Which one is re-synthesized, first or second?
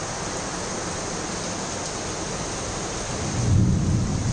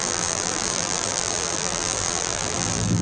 second